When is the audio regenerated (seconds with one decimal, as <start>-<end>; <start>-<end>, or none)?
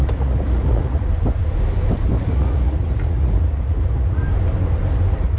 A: 0.0-1.1; 2.2-4.2